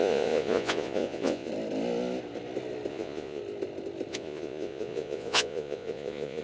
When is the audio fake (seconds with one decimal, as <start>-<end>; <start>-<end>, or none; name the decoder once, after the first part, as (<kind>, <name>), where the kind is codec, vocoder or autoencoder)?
0.0-1.5 (vocoder, Vocos); 2.9-3.4; 4.1-6.4

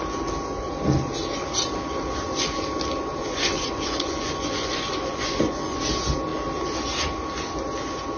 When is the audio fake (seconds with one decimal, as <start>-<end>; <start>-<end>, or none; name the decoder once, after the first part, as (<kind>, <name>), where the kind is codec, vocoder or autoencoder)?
3.2-5.8 (vocoder, Vocos)

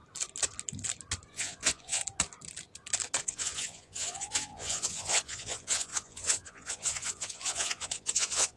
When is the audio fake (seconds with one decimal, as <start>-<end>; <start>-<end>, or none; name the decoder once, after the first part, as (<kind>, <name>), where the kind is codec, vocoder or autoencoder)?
1.3-2.0 (vocoder, Vocos); 3.2-8.6